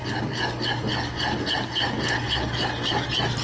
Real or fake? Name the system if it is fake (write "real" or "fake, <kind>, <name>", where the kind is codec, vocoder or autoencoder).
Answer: real